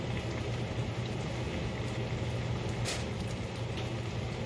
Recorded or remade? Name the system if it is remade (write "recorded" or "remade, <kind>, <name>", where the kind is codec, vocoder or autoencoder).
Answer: recorded